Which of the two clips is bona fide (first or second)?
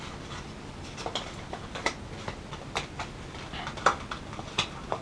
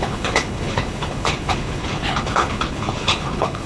first